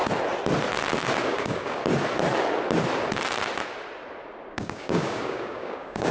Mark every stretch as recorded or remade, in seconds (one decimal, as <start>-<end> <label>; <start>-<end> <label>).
0.0-1.2 recorded; 1.2-1.8 remade; 1.8-4.5 recorded; 4.5-6.1 remade